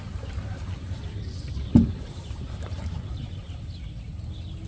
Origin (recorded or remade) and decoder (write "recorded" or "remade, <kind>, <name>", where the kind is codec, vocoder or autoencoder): recorded